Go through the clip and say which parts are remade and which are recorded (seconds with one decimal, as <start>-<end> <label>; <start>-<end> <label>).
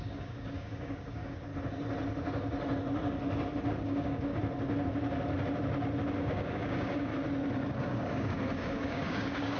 0.0-1.5 remade; 1.5-3.7 recorded; 3.7-4.3 remade; 4.3-6.2 recorded; 6.2-7.1 remade; 7.1-7.8 recorded; 7.8-9.6 remade